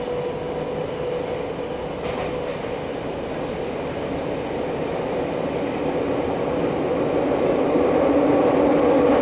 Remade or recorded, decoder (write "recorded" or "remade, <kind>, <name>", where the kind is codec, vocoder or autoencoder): recorded